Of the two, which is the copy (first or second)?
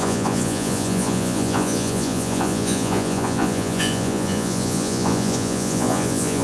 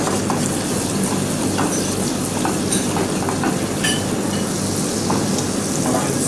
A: first